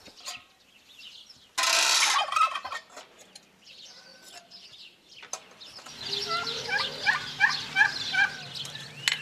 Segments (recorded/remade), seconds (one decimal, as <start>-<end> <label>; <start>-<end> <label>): 0.0-9.2 recorded